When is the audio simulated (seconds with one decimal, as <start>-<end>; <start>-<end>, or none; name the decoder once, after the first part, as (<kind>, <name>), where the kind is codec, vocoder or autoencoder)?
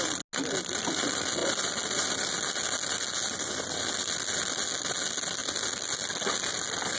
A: none